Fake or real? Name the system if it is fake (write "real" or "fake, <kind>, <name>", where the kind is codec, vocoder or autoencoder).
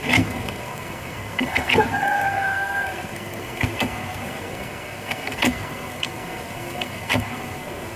fake, codec, SNAC